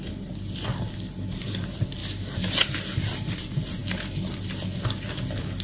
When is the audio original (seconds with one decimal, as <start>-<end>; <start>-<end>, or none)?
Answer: 0.0-5.6